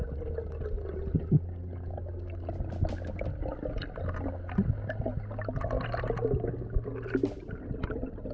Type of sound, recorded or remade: recorded